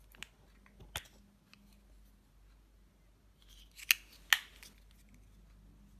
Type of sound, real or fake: real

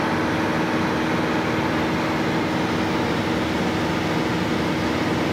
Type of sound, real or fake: real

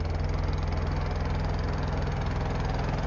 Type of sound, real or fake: real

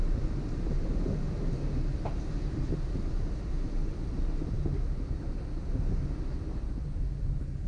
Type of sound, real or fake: real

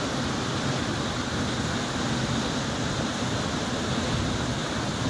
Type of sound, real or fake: real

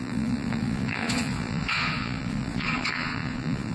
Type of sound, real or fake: fake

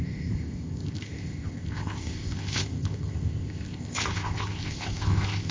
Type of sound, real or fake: fake